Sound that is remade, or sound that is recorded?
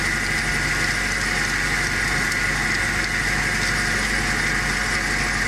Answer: recorded